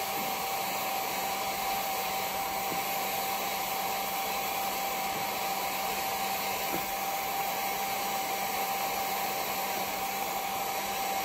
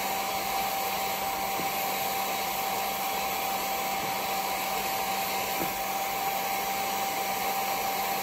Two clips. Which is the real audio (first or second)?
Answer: second